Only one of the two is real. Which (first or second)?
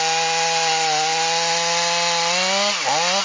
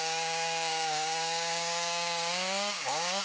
first